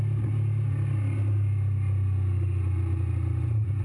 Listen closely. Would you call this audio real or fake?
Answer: real